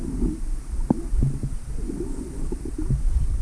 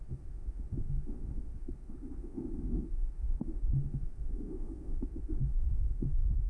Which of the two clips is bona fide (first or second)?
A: first